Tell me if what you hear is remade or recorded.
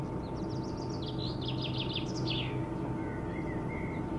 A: recorded